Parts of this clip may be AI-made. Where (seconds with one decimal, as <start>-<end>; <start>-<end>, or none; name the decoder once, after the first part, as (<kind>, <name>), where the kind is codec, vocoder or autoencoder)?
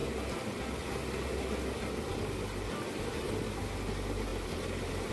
none